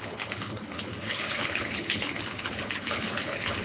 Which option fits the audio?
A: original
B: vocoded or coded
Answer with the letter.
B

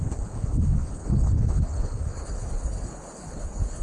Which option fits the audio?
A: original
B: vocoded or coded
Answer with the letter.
B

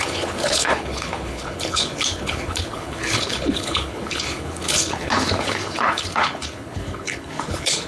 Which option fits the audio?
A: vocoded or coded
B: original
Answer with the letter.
A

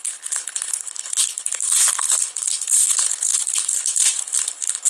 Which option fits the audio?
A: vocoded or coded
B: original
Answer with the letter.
A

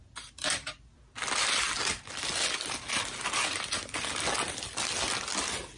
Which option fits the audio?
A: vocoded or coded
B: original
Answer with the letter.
B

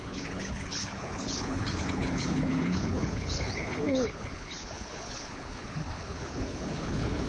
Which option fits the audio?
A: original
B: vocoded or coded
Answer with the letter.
B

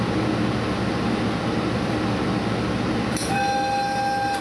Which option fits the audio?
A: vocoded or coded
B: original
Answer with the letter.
B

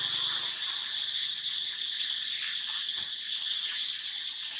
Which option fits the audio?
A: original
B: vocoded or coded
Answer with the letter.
A